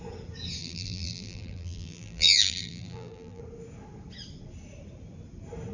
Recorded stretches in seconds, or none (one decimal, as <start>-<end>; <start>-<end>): 0.0-0.6; 3.4-5.7